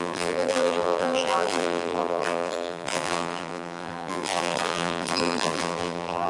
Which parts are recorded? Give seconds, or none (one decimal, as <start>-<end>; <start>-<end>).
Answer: none